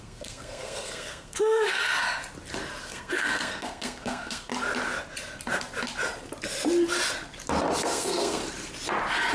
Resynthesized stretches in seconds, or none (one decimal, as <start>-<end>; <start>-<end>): 0.0-1.8; 2.8-4.5; 7.8-8.4